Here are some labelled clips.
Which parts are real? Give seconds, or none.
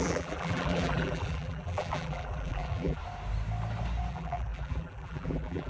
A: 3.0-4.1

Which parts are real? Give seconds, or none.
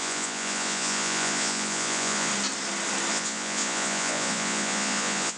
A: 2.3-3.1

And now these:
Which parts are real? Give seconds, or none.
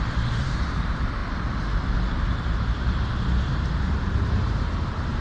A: 1.2-2.2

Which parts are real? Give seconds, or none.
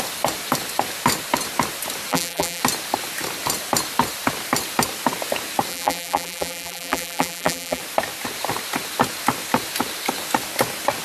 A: 0.0-2.1; 2.6-5.7; 7.8-11.0